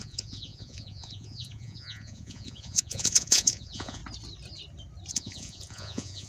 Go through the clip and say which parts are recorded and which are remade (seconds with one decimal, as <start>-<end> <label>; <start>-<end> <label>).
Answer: 0.0-4.0 remade; 4.0-5.1 recorded; 5.1-6.3 remade